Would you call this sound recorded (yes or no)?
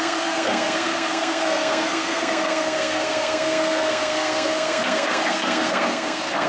no